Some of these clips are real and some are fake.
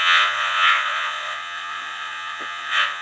fake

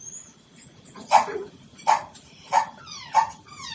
fake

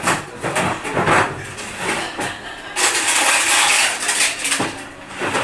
real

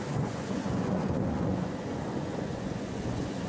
fake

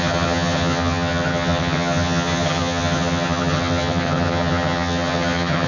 fake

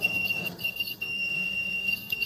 fake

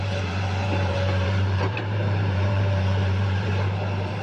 fake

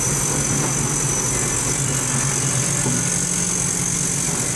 real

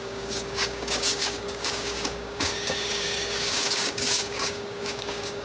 fake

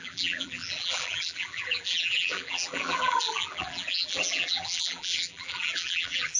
fake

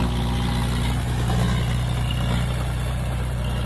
real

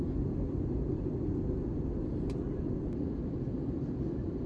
real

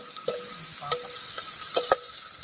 real